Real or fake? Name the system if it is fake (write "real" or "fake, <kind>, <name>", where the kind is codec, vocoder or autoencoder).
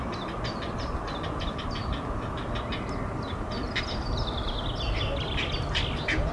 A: real